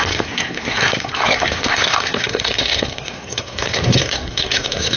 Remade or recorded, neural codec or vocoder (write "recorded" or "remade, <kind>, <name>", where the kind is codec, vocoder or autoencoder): remade, codec, SNAC